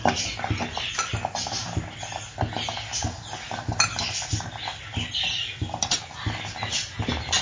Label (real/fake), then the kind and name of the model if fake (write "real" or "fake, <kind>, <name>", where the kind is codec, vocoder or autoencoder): real